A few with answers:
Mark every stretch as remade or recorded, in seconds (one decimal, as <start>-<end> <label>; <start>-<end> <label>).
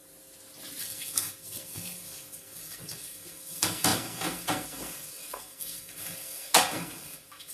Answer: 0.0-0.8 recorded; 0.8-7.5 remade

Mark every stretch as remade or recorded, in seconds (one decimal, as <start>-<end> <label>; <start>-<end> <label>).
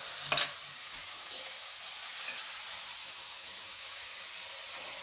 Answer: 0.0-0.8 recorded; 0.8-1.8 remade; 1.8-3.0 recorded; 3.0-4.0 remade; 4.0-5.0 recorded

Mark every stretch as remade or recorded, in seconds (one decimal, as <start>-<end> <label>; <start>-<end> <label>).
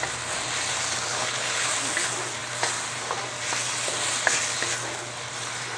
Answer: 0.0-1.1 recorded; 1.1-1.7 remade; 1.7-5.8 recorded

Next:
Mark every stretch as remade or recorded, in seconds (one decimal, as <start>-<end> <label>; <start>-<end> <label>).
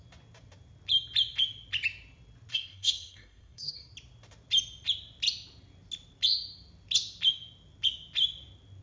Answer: 0.0-2.5 recorded; 2.5-3.9 remade; 3.9-8.8 recorded